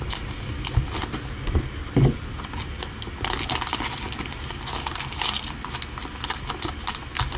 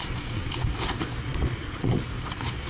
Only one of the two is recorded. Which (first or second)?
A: first